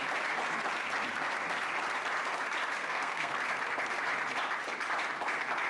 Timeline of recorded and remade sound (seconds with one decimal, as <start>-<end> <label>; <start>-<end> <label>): 0.0-2.8 recorded; 2.8-3.4 remade; 3.4-5.7 recorded

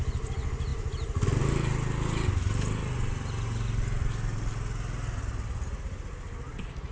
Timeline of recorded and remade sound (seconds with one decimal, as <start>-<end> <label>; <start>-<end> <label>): 0.0-6.9 recorded